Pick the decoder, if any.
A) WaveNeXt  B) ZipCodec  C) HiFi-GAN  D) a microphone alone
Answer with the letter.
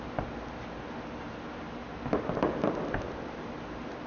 D